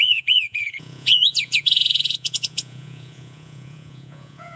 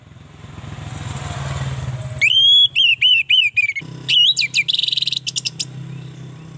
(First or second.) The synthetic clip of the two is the first